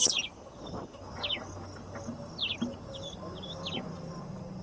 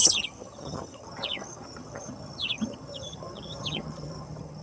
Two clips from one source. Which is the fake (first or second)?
second